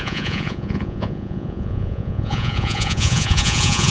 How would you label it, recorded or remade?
remade